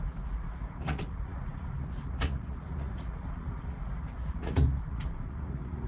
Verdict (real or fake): fake